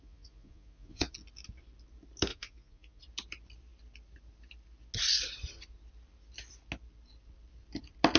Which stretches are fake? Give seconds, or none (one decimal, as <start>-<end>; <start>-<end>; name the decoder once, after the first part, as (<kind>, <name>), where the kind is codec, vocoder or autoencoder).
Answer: 0.0-1.1 (vocoder, Vocos); 2.3-3.0